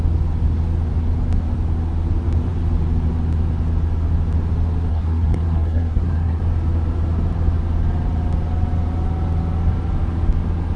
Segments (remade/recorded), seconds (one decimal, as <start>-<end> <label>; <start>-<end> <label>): 0.0-4.9 recorded; 4.9-6.4 remade; 6.4-10.8 recorded